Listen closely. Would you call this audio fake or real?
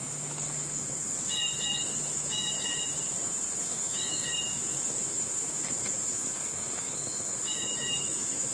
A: fake